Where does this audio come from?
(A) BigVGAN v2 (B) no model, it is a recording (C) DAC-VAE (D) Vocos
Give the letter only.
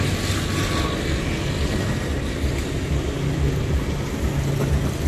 B